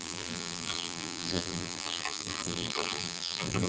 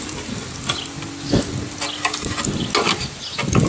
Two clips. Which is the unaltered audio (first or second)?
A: second